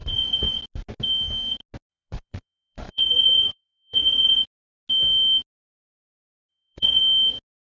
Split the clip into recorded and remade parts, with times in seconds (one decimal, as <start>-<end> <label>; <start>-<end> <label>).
0.0-0.6 remade; 0.6-1.9 recorded; 1.9-4.4 remade; 4.4-6.5 recorded; 6.5-7.0 remade; 7.0-7.7 recorded